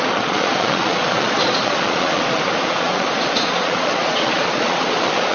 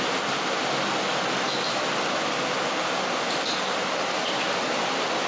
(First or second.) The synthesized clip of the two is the first